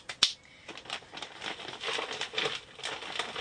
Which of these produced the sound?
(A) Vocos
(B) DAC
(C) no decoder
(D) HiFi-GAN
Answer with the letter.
C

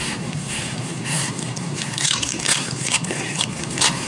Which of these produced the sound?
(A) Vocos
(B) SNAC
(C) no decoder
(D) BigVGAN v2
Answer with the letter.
B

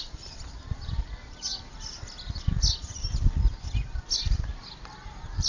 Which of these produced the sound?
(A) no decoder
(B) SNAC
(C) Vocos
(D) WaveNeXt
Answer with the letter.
A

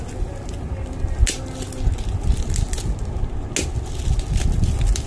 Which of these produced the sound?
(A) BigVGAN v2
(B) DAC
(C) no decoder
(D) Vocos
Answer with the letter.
C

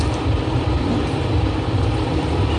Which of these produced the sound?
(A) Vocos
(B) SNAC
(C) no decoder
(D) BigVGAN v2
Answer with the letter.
D